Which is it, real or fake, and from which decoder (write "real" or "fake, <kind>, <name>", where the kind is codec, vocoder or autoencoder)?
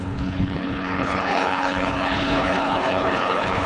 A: fake, codec, HILCodec